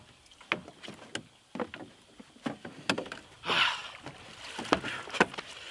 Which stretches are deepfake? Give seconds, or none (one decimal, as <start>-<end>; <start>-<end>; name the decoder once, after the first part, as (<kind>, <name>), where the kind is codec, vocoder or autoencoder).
none